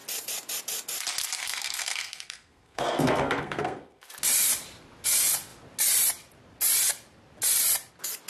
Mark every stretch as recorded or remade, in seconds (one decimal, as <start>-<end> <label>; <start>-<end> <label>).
0.0-1.4 recorded; 1.4-4.1 remade; 4.1-8.3 recorded